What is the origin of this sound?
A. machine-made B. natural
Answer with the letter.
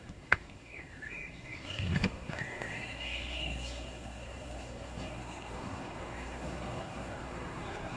A